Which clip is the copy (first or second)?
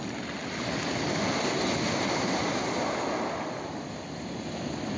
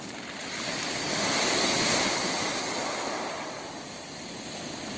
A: second